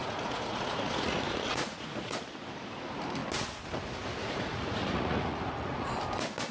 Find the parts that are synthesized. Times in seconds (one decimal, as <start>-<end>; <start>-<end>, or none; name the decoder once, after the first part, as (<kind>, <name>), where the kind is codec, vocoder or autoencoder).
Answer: 0.0-2.2 (vocoder, Vocos); 4.2-5.9

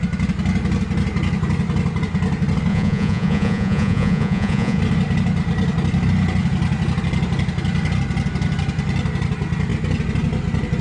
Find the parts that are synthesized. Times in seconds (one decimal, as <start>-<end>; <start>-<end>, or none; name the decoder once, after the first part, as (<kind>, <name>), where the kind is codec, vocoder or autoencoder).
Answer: 2.7-4.8 (vocoder, Vocos)

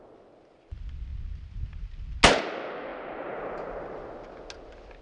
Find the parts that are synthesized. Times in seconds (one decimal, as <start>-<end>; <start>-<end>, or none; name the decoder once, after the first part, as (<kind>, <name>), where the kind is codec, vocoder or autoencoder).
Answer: none

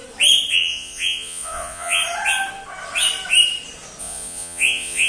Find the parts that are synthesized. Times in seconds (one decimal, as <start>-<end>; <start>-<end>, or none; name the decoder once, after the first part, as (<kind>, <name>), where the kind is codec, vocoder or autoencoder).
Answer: 0.5-2.0 (vocoder, Vocos); 4.0-5.1

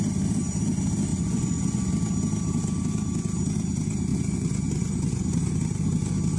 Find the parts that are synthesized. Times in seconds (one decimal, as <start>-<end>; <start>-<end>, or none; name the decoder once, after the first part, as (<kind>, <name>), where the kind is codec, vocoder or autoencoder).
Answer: 1.1-1.9 (vocoder, Vocos); 4.1-5.5

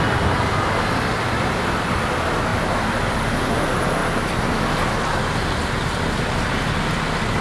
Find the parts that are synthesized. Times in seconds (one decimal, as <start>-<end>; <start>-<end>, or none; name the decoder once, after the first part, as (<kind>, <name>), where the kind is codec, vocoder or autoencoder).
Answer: none

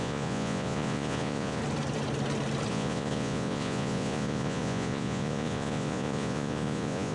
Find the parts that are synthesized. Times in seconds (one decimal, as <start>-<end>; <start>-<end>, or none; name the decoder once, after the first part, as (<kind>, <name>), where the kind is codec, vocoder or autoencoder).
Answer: 0.0-1.6 (vocoder, Vocos); 2.7-7.1